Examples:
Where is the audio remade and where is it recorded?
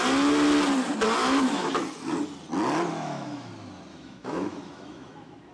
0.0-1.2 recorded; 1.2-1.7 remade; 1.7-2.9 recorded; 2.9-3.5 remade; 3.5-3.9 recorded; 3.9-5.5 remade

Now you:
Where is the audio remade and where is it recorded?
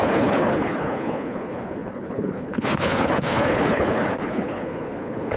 0.0-5.4 remade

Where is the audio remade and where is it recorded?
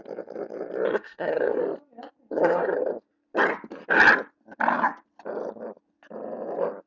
0.0-0.9 recorded; 0.9-1.6 remade; 1.6-2.3 recorded; 2.3-2.9 remade; 2.9-6.9 recorded